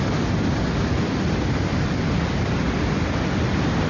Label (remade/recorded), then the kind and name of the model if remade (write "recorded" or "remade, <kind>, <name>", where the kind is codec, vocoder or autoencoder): recorded